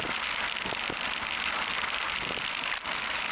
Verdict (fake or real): real